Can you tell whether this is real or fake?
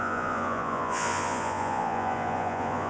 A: fake